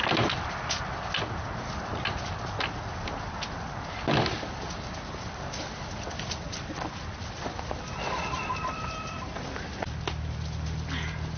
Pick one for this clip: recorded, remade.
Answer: recorded